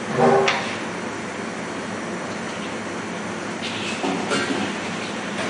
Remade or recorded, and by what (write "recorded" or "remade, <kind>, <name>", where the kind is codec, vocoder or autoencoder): recorded